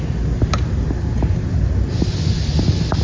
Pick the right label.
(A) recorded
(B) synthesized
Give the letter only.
A